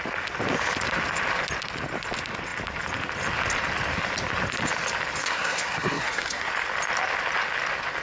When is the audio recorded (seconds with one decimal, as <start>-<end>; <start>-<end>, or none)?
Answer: 0.0-5.2; 6.5-8.0